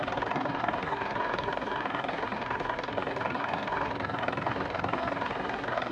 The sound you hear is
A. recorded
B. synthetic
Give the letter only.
B